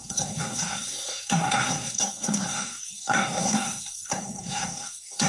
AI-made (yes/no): yes